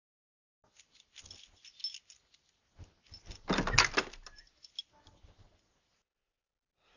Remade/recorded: recorded